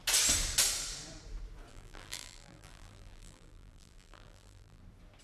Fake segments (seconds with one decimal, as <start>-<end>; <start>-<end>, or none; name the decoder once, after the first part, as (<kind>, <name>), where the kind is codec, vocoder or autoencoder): 1.7-4.8 (vocoder, BigVGAN v2)